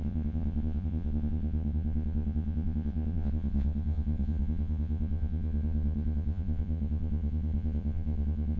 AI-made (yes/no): yes